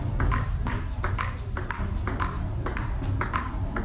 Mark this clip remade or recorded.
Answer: recorded